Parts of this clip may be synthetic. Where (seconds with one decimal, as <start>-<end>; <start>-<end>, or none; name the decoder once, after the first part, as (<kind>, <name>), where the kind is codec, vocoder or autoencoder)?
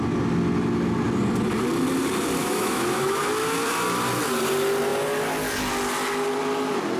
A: 2.4-3.2 (autoencoder, DAC-VAE)